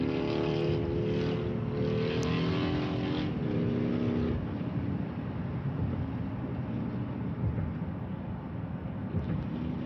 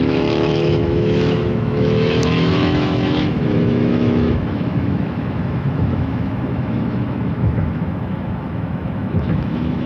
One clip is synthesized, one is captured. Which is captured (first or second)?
first